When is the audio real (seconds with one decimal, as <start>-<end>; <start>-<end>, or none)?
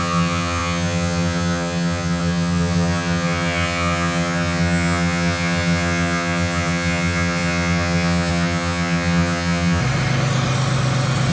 9.8-11.3